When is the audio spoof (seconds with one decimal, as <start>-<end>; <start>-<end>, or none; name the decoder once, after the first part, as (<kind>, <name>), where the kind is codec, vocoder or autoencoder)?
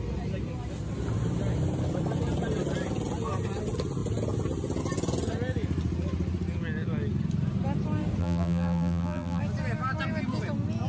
8.2-9.4 (vocoder, BigVGAN v2)